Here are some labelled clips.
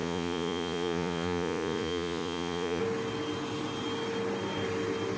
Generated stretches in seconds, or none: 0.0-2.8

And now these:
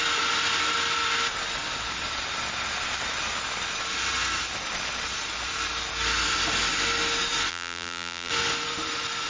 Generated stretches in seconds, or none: 7.5-8.3

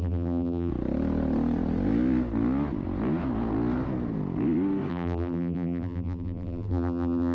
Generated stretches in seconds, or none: 0.0-0.7; 4.9-7.3

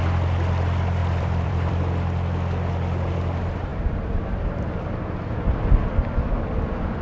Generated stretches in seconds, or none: 1.0-1.8